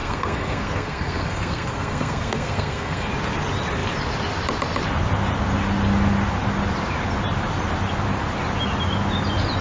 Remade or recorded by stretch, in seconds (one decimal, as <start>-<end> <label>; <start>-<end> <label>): 0.0-3.1 remade; 3.1-9.6 recorded